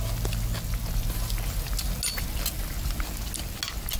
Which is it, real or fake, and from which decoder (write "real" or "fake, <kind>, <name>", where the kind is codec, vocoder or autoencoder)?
real